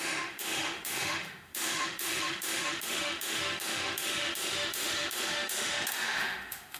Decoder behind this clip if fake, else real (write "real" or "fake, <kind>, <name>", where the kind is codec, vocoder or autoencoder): fake, autoencoder, DAC-VAE